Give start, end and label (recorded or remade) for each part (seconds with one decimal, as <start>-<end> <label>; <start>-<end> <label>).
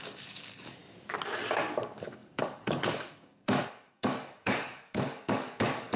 0.0-0.8 remade; 0.8-1.6 recorded; 1.6-6.0 remade